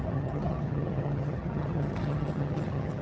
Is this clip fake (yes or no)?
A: yes